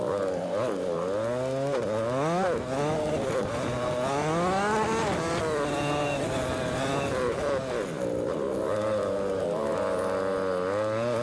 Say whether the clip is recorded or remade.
recorded